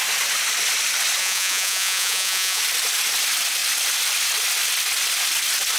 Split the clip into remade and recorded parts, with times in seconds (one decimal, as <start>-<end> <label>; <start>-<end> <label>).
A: 0.0-1.2 recorded; 1.2-2.6 remade; 2.6-5.8 recorded